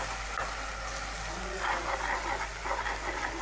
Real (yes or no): yes